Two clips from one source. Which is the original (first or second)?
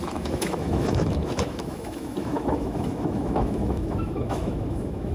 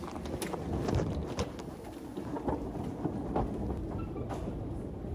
second